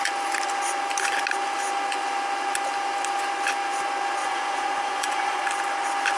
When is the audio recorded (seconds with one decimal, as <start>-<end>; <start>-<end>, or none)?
0.0-4.2; 5.5-6.2